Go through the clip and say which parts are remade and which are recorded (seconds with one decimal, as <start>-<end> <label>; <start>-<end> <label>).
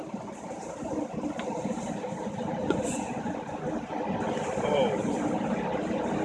0.0-2.6 recorded; 2.6-3.4 remade; 3.4-6.2 recorded